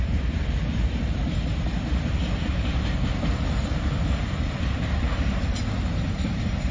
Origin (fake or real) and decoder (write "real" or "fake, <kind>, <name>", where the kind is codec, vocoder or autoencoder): fake, vocoder, BigVGAN v2